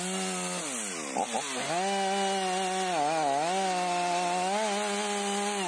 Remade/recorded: recorded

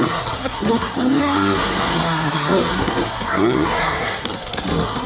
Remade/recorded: remade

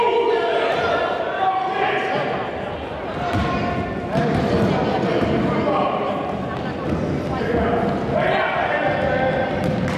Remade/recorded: recorded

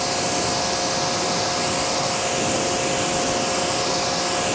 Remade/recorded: recorded